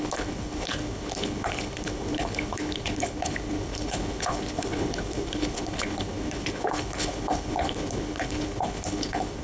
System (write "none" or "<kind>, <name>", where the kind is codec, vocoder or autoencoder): codec, HILCodec